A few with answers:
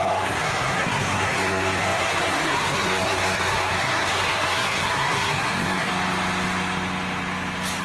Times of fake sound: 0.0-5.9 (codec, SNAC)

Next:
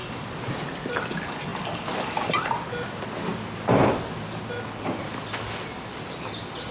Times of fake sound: none